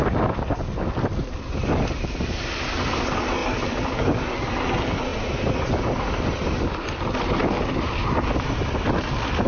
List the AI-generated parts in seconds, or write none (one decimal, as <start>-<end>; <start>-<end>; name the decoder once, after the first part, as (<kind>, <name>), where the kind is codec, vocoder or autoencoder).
none